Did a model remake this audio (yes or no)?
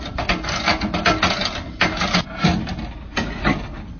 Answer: no